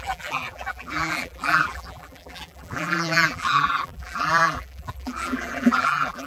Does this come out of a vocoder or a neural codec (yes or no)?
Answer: yes